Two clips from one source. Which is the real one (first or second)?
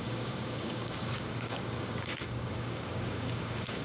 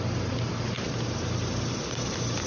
second